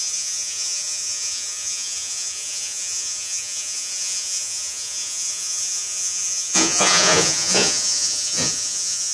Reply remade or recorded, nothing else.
remade